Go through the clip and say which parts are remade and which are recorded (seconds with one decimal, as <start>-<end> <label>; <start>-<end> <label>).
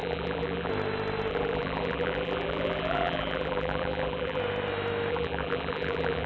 0.0-0.7 remade; 0.7-1.3 recorded; 1.3-4.4 remade; 4.4-5.1 recorded; 5.1-6.3 remade